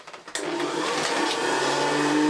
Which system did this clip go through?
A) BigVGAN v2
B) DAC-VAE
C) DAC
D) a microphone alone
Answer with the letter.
D